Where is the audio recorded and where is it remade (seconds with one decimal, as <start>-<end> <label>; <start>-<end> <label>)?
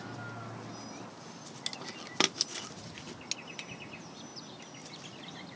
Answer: 0.0-5.6 recorded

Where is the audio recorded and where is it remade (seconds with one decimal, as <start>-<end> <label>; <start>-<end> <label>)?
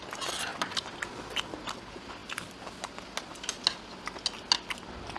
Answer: 0.0-5.2 recorded